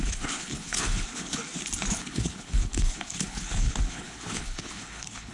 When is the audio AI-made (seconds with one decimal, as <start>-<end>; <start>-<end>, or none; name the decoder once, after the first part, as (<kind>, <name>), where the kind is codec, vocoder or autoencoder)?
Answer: 0.0-1.4 (codec, HILCodec); 1.9-5.3